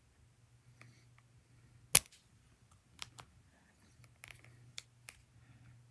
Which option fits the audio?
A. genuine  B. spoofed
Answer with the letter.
A